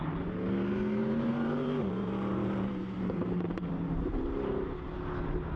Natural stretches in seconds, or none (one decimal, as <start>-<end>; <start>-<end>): 0.0-1.0; 4.4-5.6